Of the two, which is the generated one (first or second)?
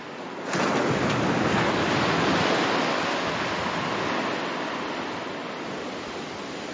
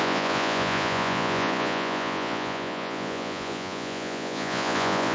second